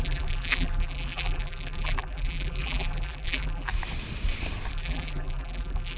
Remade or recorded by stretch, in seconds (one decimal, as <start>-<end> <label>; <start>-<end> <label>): 0.0-3.7 remade; 3.7-4.7 recorded; 4.7-6.0 remade